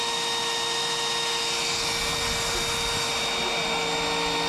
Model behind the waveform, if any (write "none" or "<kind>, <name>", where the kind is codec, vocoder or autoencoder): none